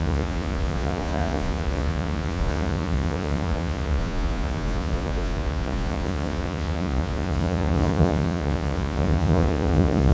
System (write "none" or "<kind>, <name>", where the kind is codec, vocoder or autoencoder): vocoder, Vocos